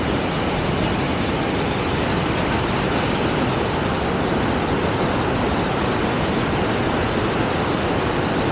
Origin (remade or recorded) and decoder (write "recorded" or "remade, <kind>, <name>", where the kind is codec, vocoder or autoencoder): recorded